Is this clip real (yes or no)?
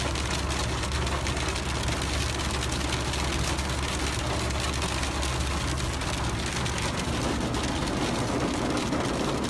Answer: yes